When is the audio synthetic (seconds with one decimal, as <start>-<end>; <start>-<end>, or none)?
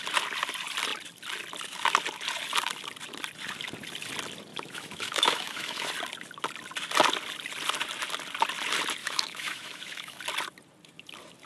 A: 4.5-5.9; 9.0-10.2